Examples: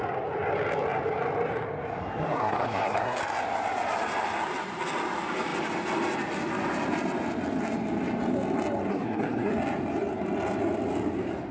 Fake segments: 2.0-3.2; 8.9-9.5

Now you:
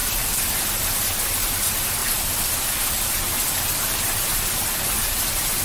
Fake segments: 0.0-0.7; 2.0-5.6

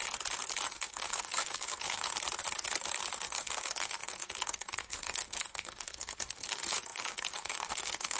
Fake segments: 0.7-2.1; 3.1-8.2